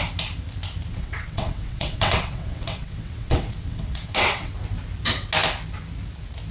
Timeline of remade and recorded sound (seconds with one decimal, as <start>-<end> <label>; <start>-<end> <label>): 0.0-0.9 recorded; 0.9-4.5 remade; 4.5-6.5 recorded